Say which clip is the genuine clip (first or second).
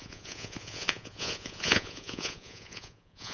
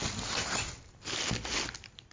second